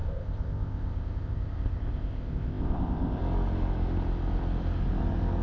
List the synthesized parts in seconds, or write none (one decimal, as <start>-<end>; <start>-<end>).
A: 0.0-3.2